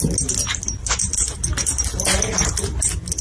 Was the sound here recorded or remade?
recorded